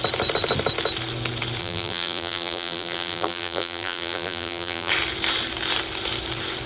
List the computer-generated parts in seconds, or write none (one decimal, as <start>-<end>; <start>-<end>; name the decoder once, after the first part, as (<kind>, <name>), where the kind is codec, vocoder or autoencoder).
1.6-4.9 (vocoder, BigVGAN v2)

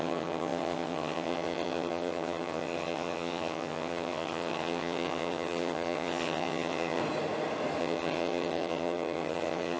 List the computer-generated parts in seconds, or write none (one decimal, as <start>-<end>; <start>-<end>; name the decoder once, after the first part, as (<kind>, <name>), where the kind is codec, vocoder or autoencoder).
0.0-7.0 (vocoder, HiFi-GAN); 7.8-9.8